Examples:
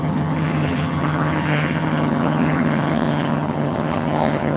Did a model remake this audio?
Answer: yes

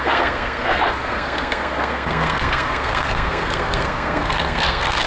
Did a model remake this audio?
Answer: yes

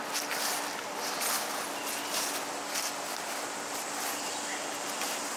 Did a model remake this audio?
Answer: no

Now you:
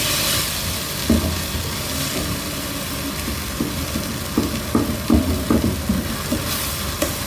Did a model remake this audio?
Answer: no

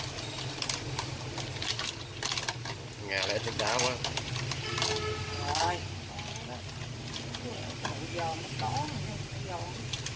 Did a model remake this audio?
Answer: no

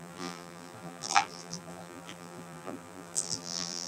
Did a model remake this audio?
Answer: yes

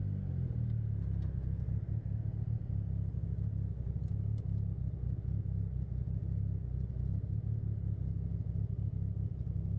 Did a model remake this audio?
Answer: no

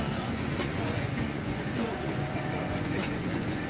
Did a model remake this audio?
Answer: yes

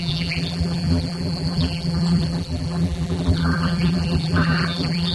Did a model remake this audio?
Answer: yes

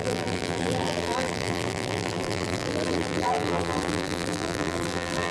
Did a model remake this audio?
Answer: yes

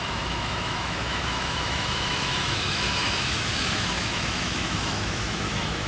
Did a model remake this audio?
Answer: yes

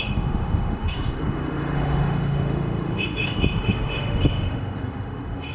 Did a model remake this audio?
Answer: yes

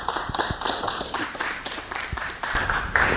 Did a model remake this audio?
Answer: yes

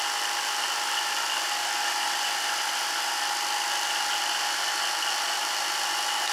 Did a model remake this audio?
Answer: no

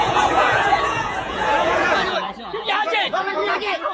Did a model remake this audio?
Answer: yes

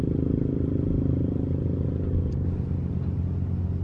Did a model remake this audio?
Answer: no